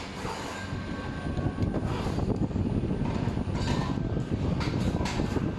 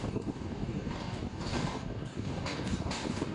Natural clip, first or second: first